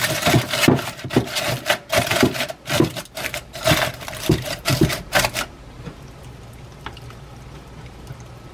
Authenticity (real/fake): fake